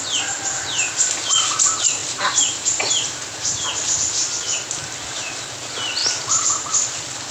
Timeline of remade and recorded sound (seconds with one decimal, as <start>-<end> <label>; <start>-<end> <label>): 0.0-2.0 recorded; 2.0-2.9 remade; 2.9-6.0 recorded; 6.0-6.7 remade; 6.7-7.3 recorded